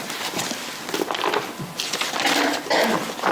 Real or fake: real